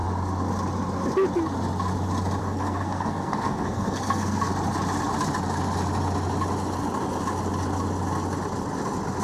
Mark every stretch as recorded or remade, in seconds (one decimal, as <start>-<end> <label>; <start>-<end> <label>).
0.0-2.4 recorded; 2.4-4.5 remade; 4.5-9.2 recorded